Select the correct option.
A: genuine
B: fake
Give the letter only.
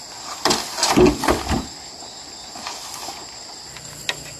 A